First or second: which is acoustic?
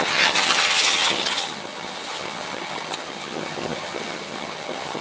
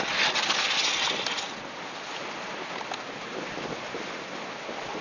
second